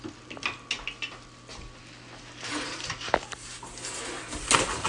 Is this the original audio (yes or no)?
yes